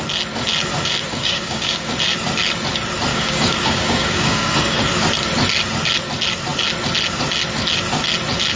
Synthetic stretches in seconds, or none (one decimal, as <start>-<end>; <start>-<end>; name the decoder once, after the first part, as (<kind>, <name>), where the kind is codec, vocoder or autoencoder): 1.1-1.9 (codec, DAC); 3.1-4.8